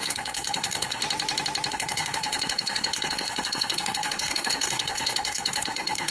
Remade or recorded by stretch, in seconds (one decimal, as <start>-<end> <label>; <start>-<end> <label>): 0.0-1.0 remade; 1.0-1.7 recorded; 1.7-6.1 remade